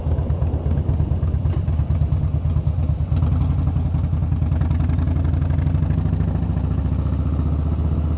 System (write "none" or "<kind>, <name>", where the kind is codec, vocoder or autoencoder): none